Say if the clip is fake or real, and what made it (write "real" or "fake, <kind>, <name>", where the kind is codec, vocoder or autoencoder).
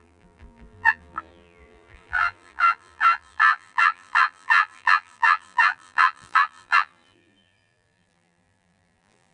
fake, vocoder, BigVGAN v2